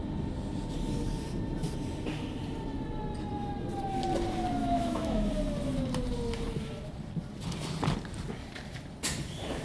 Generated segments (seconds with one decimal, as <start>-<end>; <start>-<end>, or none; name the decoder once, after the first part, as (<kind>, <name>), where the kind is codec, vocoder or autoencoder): 4.6-5.3 (autoencoder, DAC-VAE)